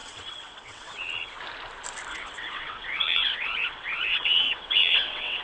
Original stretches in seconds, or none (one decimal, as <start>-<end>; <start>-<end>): 0.9-2.1